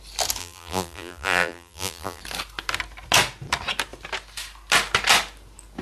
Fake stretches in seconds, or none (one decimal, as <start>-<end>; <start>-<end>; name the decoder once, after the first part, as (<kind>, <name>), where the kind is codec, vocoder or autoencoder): 0.4-2.2 (vocoder, BigVGAN v2)